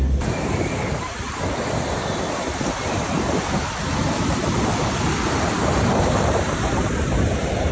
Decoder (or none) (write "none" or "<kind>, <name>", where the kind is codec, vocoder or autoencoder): vocoder, BigVGAN v2